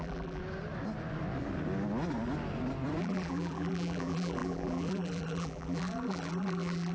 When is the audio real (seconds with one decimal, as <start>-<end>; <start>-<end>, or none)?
0.4-3.0